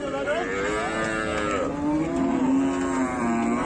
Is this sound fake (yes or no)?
no